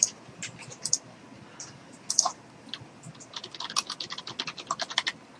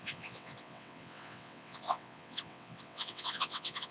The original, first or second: first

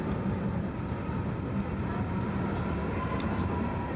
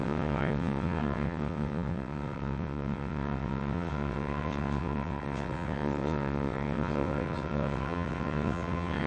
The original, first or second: first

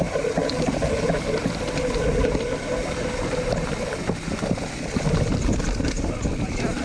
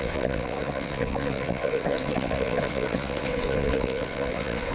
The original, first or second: first